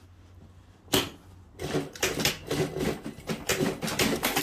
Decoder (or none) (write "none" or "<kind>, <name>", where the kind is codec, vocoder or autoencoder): none